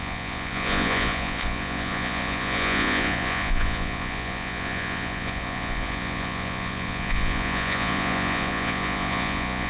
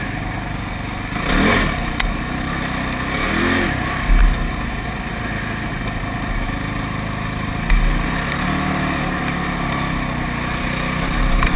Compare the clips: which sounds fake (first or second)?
first